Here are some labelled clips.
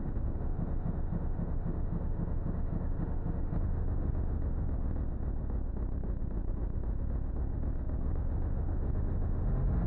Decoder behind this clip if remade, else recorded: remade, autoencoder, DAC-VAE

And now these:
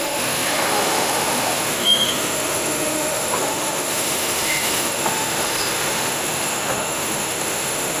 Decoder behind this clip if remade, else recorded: remade, autoencoder, DAC-VAE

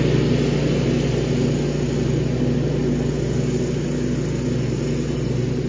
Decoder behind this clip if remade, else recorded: recorded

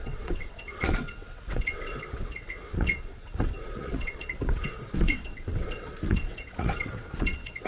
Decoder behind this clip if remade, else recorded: remade, vocoder, WaveNeXt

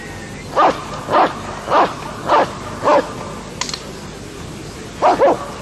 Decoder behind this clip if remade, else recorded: recorded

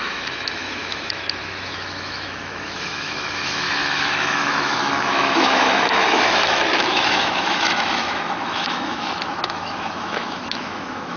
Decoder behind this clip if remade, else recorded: remade, autoencoder, DAC-VAE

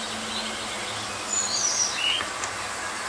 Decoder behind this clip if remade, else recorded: recorded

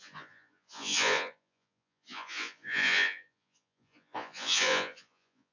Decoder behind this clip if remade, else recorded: remade, vocoder, Vocos